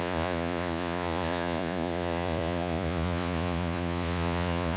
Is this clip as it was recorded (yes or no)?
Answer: no